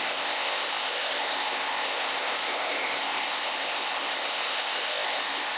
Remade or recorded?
remade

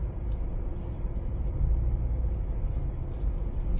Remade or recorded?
recorded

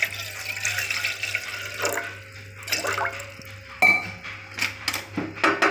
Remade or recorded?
recorded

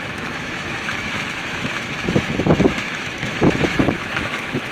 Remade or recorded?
remade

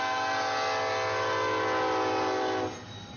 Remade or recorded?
recorded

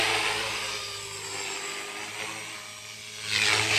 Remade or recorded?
recorded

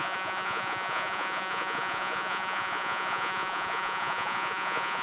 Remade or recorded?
remade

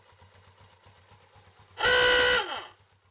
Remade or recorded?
recorded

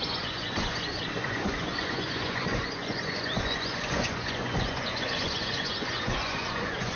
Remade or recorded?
remade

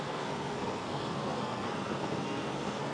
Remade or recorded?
remade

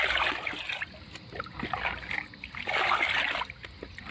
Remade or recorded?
recorded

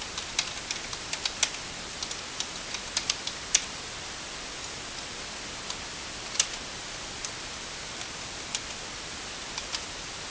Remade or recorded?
recorded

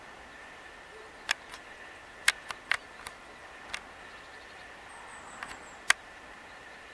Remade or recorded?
recorded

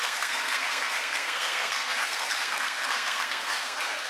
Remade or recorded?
remade